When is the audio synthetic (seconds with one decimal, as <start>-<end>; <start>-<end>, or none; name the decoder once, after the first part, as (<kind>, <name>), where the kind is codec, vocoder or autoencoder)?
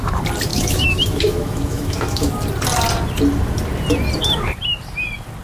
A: 0.5-2.3 (autoencoder, DAC-VAE)